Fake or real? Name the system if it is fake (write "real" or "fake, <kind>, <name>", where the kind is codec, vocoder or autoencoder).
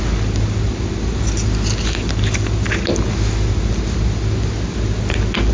real